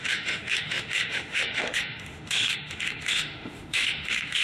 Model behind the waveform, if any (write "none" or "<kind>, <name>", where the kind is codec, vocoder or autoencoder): autoencoder, DAC-VAE